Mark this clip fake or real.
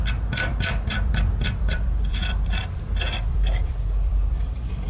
fake